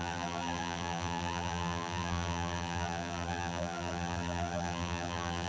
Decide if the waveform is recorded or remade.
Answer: remade